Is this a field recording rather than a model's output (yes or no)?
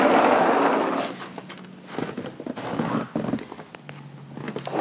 yes